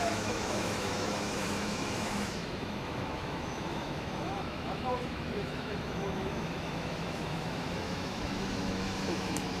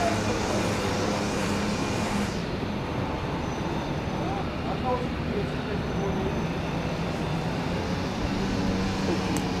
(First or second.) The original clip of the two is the second